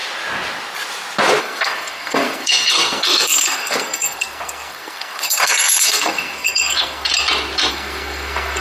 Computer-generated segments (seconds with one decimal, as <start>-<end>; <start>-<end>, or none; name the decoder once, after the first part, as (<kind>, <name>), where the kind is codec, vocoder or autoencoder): 1.4-7.1 (codec, SNAC); 7.7-8.6